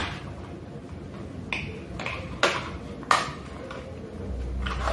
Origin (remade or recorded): recorded